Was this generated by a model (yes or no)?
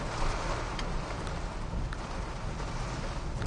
no